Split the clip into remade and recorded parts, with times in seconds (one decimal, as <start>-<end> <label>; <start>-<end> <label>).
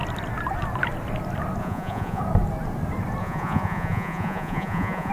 0.0-1.6 recorded; 1.6-2.2 remade; 2.2-3.2 recorded; 3.2-5.1 remade